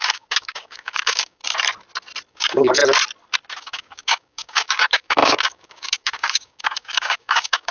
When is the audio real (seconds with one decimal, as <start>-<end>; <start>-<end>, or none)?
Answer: 1.4-2.3; 2.8-3.6